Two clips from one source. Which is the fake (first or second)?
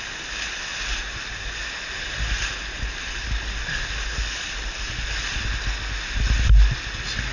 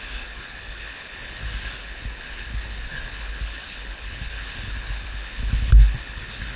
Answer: second